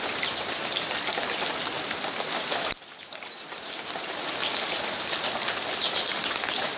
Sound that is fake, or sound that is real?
real